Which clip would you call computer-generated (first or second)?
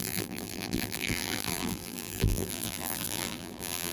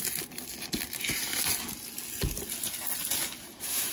first